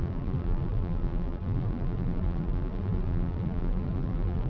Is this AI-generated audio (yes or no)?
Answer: yes